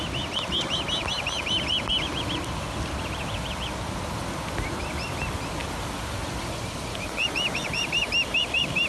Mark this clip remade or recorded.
recorded